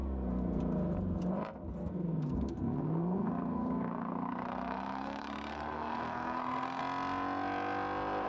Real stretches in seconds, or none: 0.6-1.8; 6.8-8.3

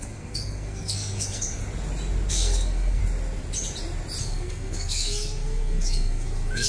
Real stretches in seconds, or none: 1.6-2.3; 3.0-4.2

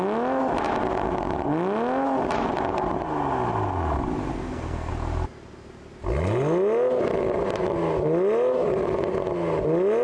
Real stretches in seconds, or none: 0.0-4.3; 4.9-10.0

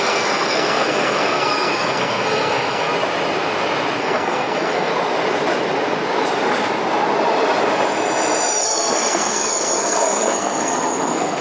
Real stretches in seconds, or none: 2.9-4.0; 4.9-8.6